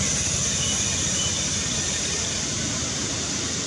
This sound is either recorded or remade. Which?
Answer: recorded